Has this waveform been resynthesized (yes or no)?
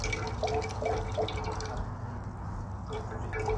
no